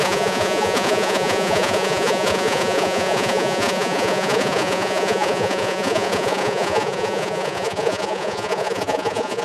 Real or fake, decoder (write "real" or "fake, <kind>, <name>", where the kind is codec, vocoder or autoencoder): fake, vocoder, Vocos